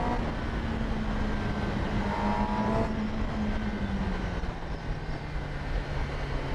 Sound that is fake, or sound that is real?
real